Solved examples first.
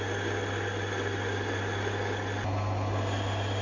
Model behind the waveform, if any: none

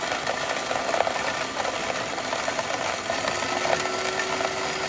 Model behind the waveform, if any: none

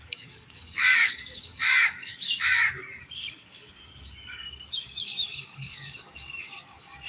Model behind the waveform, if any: codec, DAC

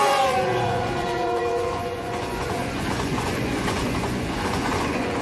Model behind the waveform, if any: vocoder, Vocos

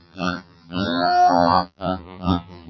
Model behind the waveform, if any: vocoder, BigVGAN v2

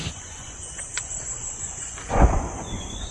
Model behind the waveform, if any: vocoder, Vocos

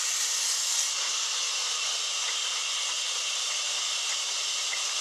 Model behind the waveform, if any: none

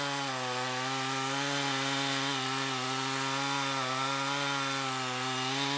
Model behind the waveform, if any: none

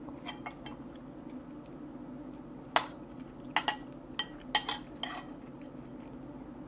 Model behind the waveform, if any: none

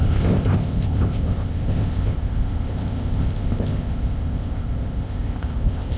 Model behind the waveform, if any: codec, ZipCodec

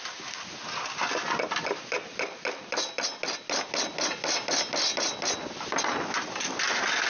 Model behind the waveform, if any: none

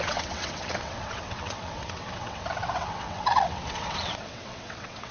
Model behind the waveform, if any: vocoder, WaveNeXt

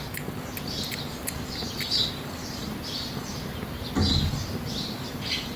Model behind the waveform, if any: none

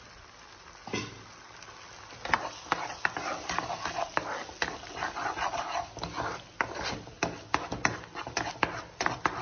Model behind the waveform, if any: none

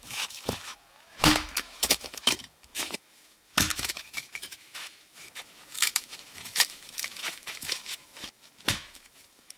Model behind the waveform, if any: autoencoder, DAC-VAE